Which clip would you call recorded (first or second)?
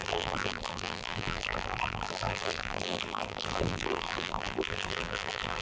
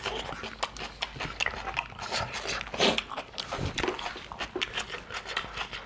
second